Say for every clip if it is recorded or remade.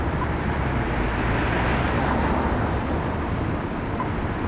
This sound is recorded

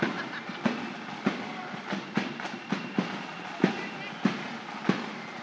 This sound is recorded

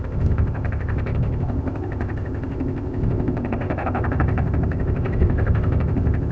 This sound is remade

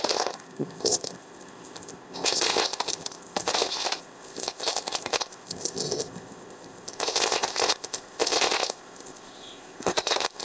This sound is remade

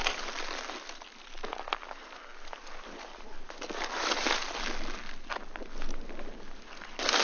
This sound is recorded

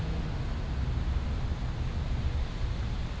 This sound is recorded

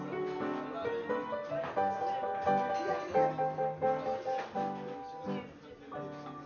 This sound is recorded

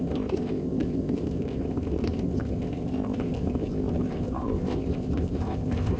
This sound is remade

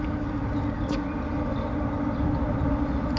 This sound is recorded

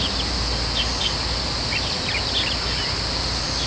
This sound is recorded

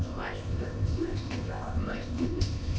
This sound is remade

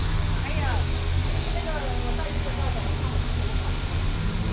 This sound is recorded